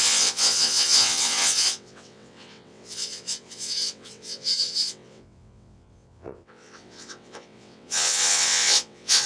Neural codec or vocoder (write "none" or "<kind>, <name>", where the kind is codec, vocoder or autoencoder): vocoder, WaveNeXt